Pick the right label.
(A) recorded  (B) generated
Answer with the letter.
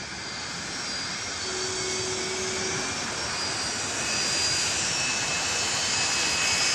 A